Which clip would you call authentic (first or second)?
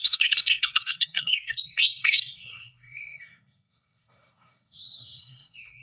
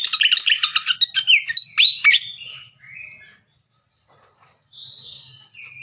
second